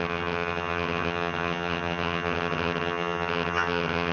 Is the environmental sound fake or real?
fake